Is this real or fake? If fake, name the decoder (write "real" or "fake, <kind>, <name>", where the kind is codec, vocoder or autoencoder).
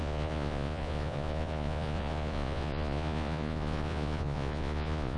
fake, vocoder, Vocos